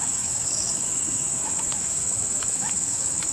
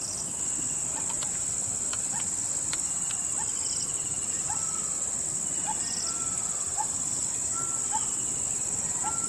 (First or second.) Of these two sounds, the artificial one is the first